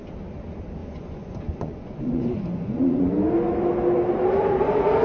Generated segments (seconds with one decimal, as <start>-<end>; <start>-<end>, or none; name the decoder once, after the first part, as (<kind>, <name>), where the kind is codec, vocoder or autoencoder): 0.8-3.1 (vocoder, Vocos)